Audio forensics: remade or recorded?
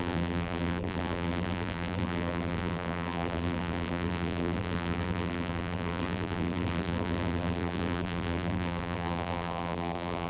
remade